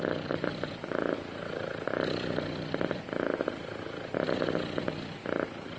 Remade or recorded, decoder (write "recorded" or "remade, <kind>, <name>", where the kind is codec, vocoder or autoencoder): recorded